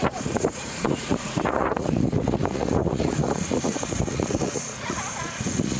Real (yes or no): no